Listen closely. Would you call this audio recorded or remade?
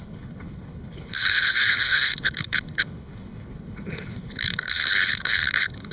remade